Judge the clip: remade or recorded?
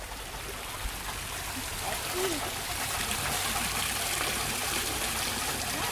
recorded